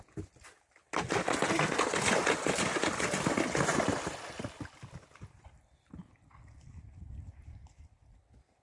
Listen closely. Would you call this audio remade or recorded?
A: recorded